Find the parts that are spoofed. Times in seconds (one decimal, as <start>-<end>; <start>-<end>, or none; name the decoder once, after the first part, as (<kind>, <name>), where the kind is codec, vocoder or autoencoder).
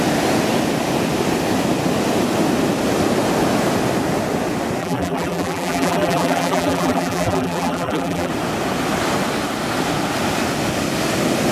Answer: 4.8-8.3 (vocoder, BigVGAN v2)